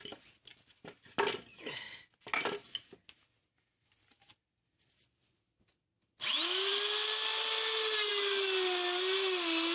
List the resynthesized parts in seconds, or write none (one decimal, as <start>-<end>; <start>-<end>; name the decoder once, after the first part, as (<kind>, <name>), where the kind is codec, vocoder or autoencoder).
none